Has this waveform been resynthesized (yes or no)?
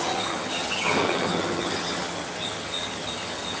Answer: yes